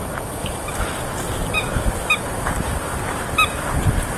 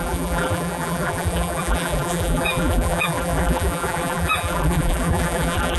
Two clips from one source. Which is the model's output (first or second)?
second